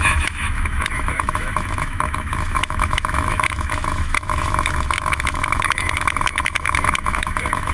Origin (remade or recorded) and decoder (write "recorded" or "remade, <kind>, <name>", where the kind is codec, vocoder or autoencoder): remade, autoencoder, DAC-VAE